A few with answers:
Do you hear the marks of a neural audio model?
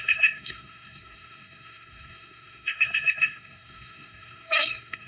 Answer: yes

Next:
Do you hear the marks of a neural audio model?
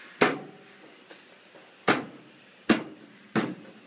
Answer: no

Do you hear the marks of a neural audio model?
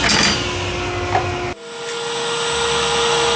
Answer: no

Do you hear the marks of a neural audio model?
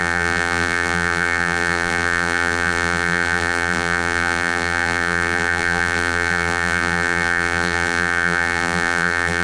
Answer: yes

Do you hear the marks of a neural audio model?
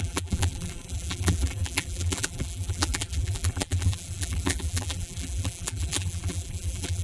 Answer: yes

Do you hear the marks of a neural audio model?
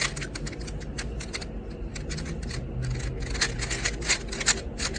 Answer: no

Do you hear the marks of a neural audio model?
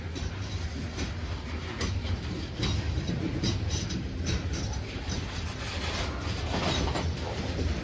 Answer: no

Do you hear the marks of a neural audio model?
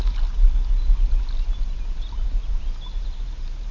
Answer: no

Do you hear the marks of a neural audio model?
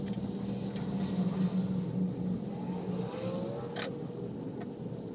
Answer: no